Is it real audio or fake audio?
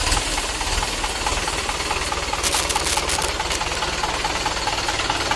real